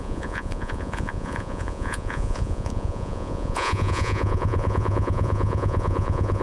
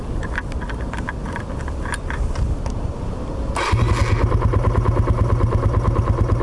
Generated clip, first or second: first